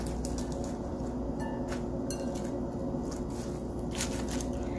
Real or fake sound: real